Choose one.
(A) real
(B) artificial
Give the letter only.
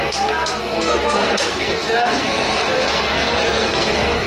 B